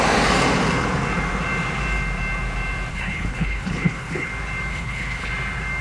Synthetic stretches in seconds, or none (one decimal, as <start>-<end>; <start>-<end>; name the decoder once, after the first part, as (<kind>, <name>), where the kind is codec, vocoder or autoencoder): 2.9-4.3 (codec, HILCodec); 4.7-5.3